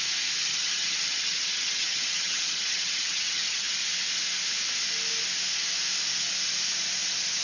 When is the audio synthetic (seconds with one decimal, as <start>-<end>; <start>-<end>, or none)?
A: 0.4-3.7